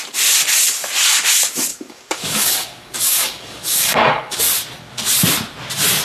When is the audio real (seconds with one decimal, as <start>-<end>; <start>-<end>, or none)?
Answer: 0.0-1.7; 4.4-6.0